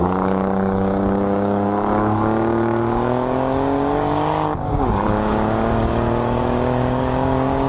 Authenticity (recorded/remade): remade